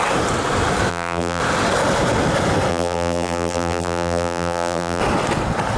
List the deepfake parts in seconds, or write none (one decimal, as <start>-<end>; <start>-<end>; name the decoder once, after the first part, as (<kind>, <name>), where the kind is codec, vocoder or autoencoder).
0.9-1.4 (vocoder, BigVGAN v2); 2.7-5.0